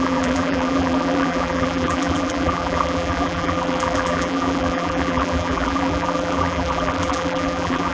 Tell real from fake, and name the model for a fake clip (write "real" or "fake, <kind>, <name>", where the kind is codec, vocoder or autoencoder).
fake, vocoder, BigVGAN v2